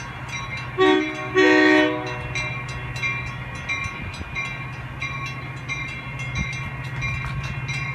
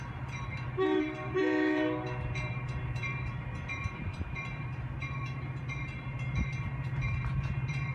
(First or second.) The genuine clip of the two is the first